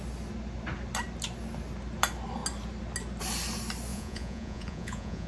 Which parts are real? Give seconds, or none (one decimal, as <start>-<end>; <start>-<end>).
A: 0.0-3.9